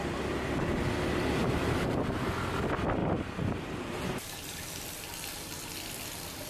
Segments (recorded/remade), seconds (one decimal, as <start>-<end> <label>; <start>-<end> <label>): 0.0-1.4 recorded; 1.4-2.3 remade; 2.3-3.0 recorded; 3.0-4.8 remade; 4.8-6.5 recorded